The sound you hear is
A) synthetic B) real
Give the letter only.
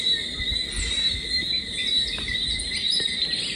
B